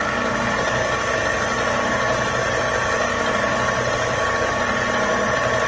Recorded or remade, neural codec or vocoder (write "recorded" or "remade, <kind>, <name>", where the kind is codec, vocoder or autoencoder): recorded